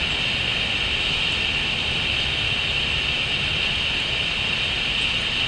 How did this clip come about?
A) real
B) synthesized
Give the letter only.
A